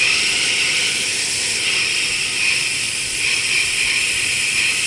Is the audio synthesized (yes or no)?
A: no